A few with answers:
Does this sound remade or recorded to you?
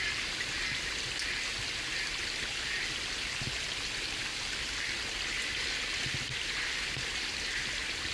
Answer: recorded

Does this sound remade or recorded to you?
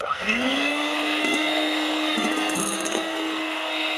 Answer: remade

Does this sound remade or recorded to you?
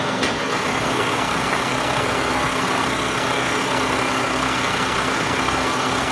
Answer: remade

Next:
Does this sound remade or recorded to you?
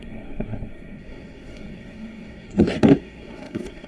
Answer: remade